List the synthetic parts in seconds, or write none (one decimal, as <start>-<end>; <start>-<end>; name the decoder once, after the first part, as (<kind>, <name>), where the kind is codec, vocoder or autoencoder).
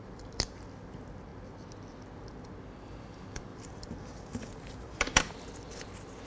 3.5-5.2 (vocoder, BigVGAN v2)